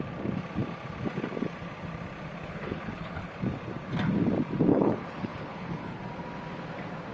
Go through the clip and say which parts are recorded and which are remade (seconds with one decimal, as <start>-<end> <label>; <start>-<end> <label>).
0.0-2.3 recorded; 2.3-3.4 remade; 3.4-4.7 recorded; 4.7-6.0 remade; 6.0-7.1 recorded